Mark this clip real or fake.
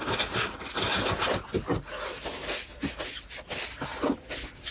real